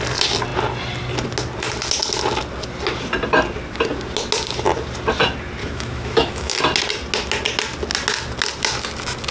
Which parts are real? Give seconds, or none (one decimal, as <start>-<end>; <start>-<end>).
0.0-5.6; 6.6-9.3